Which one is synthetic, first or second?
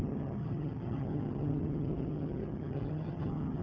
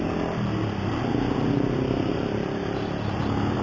first